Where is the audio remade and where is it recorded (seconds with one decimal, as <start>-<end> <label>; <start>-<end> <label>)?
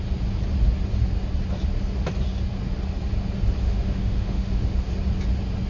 0.0-3.6 recorded; 3.6-4.9 remade; 4.9-5.7 recorded